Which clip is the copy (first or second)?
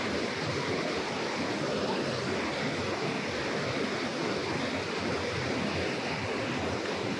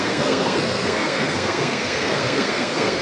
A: second